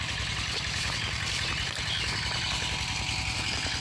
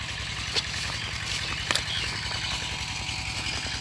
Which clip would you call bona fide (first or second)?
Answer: second